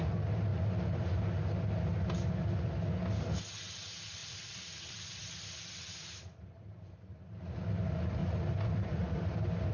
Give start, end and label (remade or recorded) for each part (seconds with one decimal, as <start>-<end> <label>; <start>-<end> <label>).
0.0-4.2 recorded; 4.2-5.5 remade; 5.5-5.9 recorded; 5.9-7.4 remade; 7.4-8.2 recorded; 8.2-9.7 remade